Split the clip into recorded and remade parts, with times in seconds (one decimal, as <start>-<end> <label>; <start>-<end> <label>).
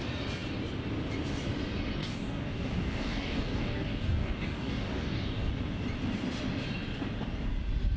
0.0-2.0 recorded; 2.0-5.5 remade; 5.5-8.0 recorded